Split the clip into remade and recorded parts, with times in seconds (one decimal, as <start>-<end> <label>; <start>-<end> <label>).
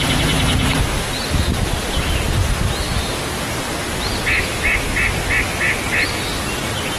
0.0-7.0 recorded